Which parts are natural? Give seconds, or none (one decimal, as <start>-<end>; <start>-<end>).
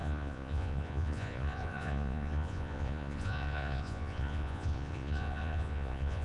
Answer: none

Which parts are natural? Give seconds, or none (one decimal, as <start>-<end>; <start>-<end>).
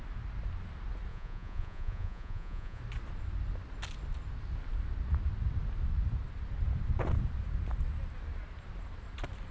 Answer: 0.0-1.1; 2.8-9.5